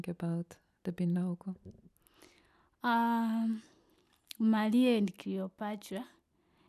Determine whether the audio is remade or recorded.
recorded